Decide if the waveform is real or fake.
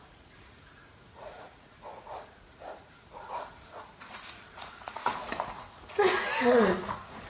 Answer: fake